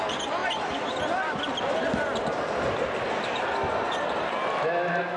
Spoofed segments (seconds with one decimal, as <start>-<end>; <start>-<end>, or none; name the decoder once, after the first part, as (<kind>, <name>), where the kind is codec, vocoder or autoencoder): none

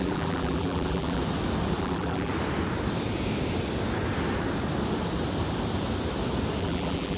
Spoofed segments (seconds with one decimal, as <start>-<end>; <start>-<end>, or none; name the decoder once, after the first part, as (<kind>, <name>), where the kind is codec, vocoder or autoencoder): 0.0-1.2 (vocoder, BigVGAN v2); 1.8-2.3; 6.6-7.2

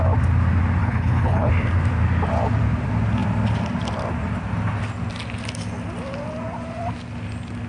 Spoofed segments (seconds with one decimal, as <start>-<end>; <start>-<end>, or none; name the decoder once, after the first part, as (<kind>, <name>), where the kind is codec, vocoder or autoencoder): 0.8-1.5 (codec, HILCodec)

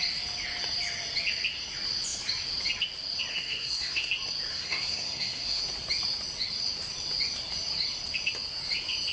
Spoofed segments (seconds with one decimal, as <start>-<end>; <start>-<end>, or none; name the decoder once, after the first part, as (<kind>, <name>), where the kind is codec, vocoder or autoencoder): 3.3-4.1 (codec, SNAC); 4.5-5.6

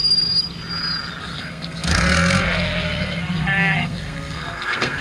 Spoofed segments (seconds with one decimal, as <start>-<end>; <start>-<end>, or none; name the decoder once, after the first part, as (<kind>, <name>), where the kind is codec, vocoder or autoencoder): 1.2-5.0 (codec, SNAC)

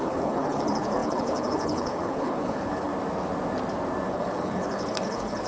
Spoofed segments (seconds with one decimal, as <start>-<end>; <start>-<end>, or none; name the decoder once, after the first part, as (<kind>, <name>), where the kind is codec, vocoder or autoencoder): 0.0-2.9 (codec, HILCodec); 4.1-5.5

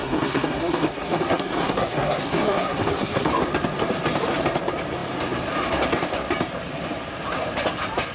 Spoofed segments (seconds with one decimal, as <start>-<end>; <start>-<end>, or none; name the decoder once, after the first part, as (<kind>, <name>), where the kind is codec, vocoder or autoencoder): 0.0-3.3 (codec, SNAC)